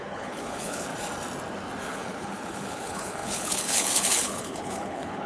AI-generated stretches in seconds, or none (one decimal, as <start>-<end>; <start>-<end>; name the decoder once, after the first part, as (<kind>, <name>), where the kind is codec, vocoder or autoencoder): 0.0-0.9 (codec, HILCodec); 1.8-5.3